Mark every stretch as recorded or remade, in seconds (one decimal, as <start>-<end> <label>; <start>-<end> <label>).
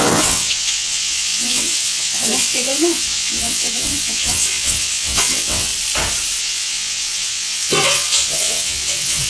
0.0-5.7 remade; 5.7-6.4 recorded; 6.4-9.3 remade